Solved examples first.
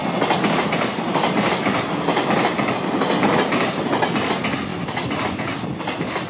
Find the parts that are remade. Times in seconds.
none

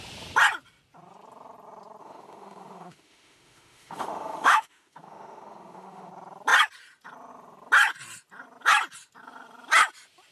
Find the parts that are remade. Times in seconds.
2.0-6.1 (autoencoder, DAC-VAE)